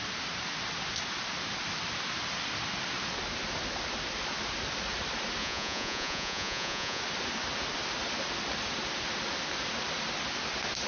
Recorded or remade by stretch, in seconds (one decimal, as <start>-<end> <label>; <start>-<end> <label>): 0.0-5.4 recorded; 5.4-7.0 remade; 7.0-10.9 recorded